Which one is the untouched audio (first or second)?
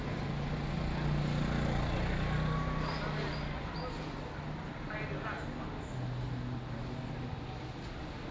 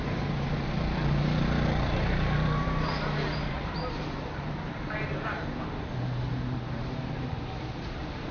first